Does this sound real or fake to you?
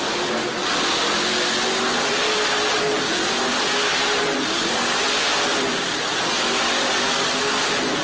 real